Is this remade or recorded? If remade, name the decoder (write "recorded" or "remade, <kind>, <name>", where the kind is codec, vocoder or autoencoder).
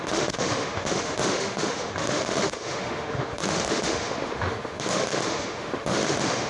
remade, autoencoder, DAC-VAE